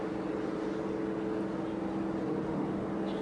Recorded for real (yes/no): yes